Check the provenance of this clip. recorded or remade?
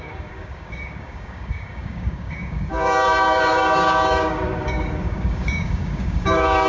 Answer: remade